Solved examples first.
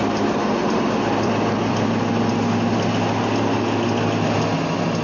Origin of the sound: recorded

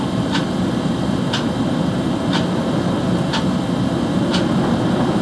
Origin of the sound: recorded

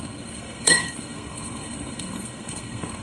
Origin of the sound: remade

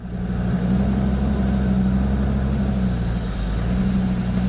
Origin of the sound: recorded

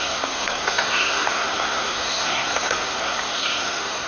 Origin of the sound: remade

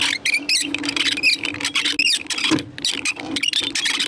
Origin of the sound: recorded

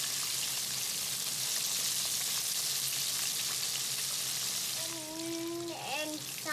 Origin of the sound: recorded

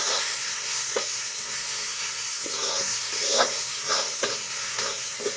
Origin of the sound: remade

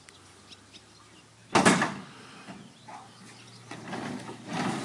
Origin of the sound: recorded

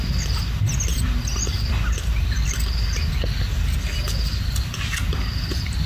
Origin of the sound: recorded